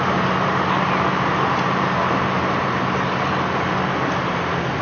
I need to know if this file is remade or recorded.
recorded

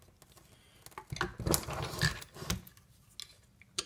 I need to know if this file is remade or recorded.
recorded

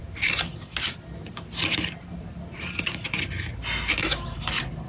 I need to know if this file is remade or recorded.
recorded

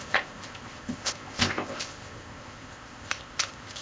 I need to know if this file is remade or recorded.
remade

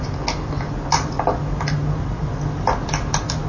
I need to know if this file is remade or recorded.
recorded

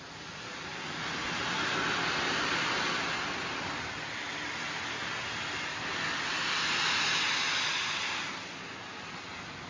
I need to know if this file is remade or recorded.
recorded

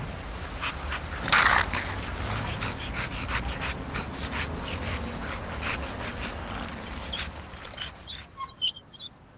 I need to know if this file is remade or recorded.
recorded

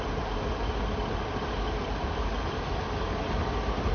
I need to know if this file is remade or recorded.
recorded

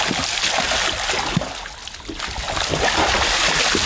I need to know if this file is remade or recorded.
recorded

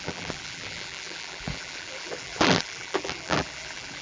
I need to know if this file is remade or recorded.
remade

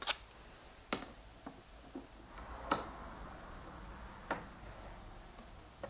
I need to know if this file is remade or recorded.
recorded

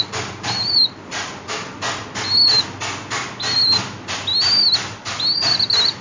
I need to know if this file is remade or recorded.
recorded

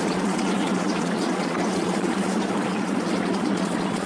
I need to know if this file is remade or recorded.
remade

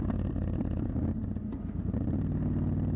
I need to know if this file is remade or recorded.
recorded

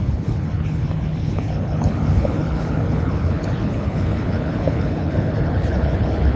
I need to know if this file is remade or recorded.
remade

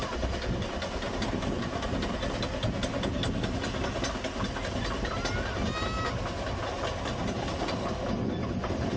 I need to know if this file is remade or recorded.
recorded